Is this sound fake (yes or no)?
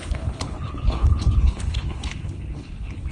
yes